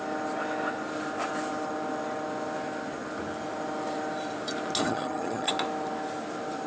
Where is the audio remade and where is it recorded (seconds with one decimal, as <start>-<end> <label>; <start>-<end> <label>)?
0.0-4.8 recorded; 4.8-5.5 remade; 5.5-6.7 recorded